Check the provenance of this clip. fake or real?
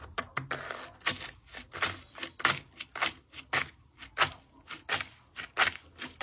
real